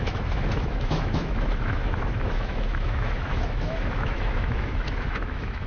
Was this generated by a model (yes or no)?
yes